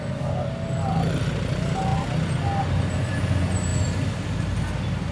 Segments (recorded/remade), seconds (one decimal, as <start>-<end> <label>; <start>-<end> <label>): 0.0-5.1 recorded